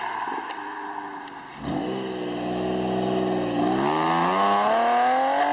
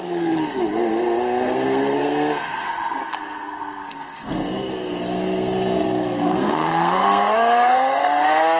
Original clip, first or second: first